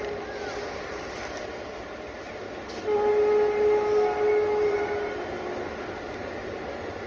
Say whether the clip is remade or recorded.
recorded